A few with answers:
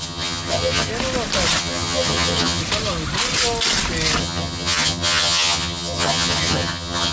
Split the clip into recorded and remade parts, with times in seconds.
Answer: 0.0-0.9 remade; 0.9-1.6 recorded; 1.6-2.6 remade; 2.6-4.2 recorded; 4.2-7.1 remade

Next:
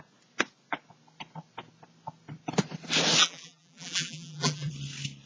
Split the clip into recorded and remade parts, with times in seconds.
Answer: 0.0-3.2 recorded; 3.2-4.7 remade; 4.7-5.3 recorded

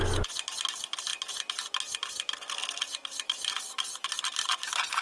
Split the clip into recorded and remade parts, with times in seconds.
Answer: 0.0-5.0 recorded

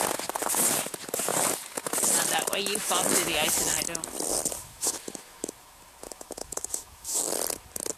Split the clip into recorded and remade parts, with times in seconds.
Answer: 0.0-2.8 recorded; 2.8-3.5 remade; 3.5-4.6 recorded; 4.6-7.2 remade; 7.2-8.0 recorded